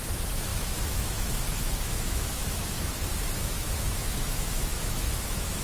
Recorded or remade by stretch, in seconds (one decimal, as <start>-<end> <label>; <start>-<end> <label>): 0.0-5.6 remade